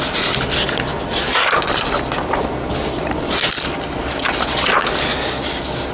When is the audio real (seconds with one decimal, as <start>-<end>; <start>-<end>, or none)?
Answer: 0.0-5.9